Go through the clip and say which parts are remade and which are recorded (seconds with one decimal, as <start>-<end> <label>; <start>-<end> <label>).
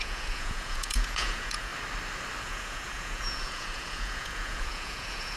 0.0-1.7 remade; 1.7-2.4 recorded; 2.4-5.4 remade